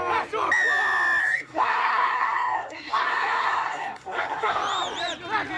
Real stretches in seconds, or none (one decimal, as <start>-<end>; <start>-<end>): 0.0-1.2; 4.6-5.6